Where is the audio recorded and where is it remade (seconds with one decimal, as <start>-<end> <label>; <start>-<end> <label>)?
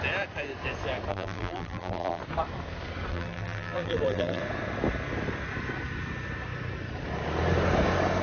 0.0-1.1 recorded; 1.1-2.2 remade; 2.2-3.1 recorded; 3.1-4.4 remade; 4.4-8.2 recorded